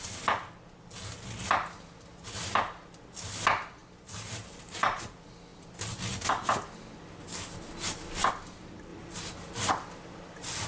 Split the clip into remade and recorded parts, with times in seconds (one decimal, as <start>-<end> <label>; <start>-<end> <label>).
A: 0.0-3.8 recorded; 3.8-5.0 remade; 5.0-10.7 recorded